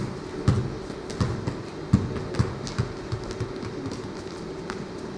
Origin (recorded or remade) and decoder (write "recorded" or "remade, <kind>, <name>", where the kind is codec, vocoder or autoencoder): recorded